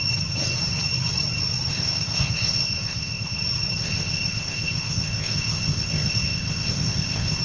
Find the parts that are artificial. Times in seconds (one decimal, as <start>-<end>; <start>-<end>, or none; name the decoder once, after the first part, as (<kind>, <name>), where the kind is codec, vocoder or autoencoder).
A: 1.7-3.4 (codec, ZipCodec); 3.8-7.4